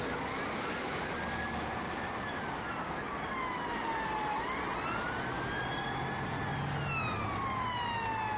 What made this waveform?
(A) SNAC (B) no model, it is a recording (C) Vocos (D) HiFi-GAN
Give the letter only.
B